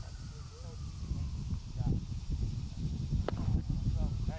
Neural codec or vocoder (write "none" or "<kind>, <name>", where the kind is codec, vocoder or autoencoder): none